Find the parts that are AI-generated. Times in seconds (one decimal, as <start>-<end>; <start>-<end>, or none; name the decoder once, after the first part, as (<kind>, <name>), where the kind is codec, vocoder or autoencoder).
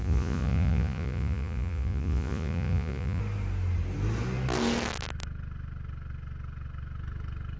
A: 0.0-3.2 (vocoder, Vocos)